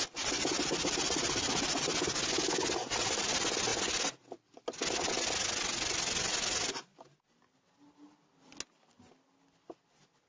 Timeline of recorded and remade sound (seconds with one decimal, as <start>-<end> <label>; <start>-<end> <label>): 0.0-10.3 recorded

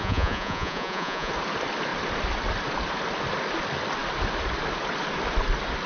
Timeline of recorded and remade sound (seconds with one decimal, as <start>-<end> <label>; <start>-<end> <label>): 0.0-1.3 remade; 1.3-5.9 recorded